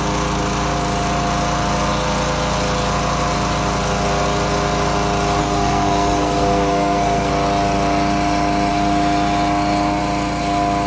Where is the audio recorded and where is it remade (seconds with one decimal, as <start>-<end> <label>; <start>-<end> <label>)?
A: 0.0-5.4 recorded; 5.4-7.3 remade; 7.3-10.9 recorded